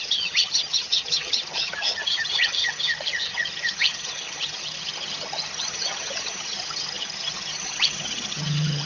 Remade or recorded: remade